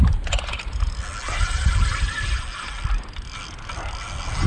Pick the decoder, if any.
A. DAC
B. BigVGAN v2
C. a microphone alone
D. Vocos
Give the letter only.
C